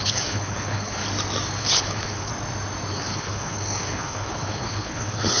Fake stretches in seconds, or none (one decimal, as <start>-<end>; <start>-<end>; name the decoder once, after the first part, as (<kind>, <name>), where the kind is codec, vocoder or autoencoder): 0.0-1.0 (codec, HILCodec); 1.6-2.3; 2.9-5.4